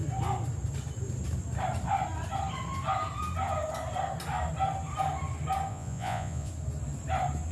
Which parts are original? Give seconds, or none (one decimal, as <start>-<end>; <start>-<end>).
0.0-5.7; 6.5-7.5